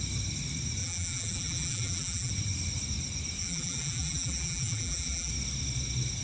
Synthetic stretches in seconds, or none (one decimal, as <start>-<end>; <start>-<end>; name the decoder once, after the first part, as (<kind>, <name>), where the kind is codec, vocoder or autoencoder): 0.8-2.3 (vocoder, BigVGAN v2); 3.4-5.3

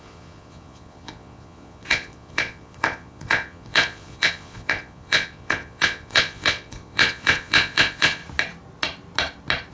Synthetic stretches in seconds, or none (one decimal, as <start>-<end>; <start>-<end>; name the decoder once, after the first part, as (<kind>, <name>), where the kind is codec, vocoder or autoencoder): 0.0-8.2 (vocoder, Vocos)

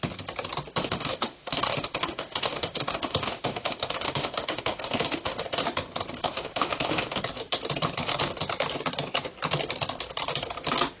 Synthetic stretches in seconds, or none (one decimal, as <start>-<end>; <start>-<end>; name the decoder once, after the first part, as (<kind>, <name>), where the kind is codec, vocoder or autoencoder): 0.8-5.6 (autoencoder, DAC-VAE); 6.2-7.2

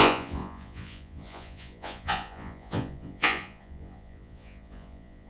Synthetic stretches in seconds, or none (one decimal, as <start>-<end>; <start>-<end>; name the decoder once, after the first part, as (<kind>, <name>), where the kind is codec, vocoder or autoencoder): 0.0-5.3 (vocoder, Vocos)

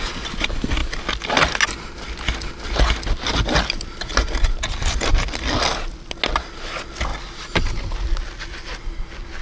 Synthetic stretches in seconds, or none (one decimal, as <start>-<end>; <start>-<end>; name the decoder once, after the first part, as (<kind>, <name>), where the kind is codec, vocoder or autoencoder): none

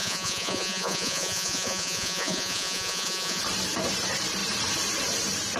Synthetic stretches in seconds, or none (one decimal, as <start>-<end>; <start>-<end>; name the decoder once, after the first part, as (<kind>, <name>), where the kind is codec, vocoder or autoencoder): 0.0-3.4 (vocoder, Vocos)